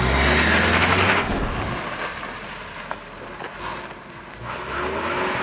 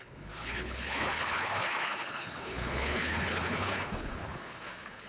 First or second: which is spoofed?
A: second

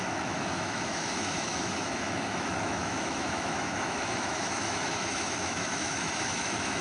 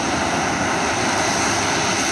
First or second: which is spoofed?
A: first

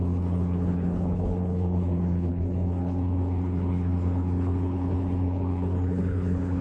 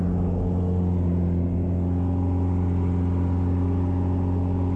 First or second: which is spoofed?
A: first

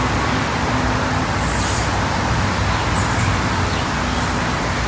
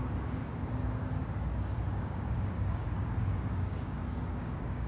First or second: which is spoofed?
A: second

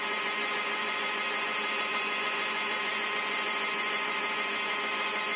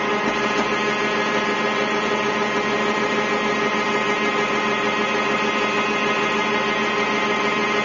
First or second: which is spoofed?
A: first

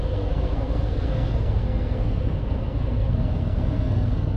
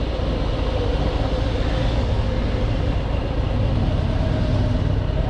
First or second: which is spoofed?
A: first